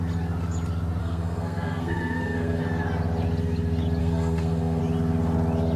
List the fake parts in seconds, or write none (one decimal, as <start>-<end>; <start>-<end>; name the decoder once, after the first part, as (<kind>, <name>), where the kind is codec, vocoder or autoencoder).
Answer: 1.0-2.6 (codec, SNAC); 4.0-4.8